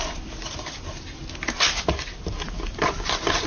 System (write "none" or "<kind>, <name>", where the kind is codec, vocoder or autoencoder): none